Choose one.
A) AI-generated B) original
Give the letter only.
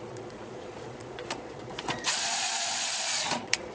A